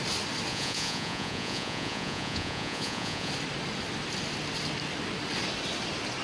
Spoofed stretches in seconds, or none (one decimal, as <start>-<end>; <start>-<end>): 0.5-3.3